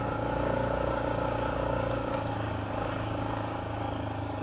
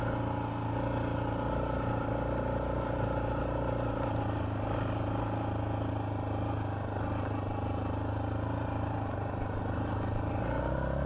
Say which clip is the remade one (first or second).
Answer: first